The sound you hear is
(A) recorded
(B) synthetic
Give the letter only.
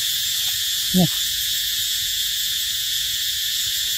B